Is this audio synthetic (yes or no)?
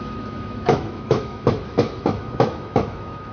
yes